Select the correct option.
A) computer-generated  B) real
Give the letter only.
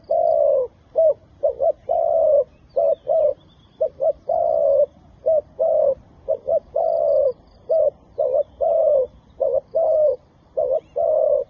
A